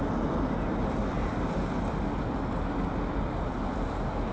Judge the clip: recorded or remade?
recorded